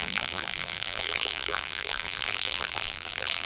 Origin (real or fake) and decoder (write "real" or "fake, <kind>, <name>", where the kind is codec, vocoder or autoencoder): fake, vocoder, BigVGAN v2